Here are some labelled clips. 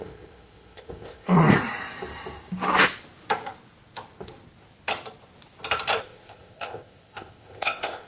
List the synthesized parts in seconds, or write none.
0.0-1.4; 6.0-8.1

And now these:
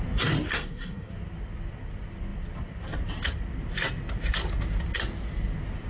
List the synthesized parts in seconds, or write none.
0.5-1.1

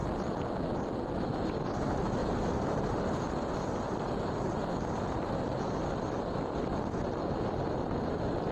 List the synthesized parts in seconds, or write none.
2.2-2.9; 4.6-5.4